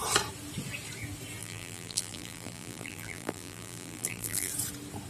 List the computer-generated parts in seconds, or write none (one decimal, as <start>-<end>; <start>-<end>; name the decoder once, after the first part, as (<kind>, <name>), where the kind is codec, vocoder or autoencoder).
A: 1.4-4.5 (vocoder, BigVGAN v2)